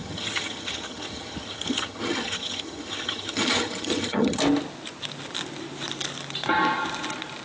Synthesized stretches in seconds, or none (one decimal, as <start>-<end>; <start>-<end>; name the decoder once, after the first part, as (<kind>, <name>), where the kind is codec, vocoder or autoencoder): 0.0-4.4 (vocoder, HiFi-GAN)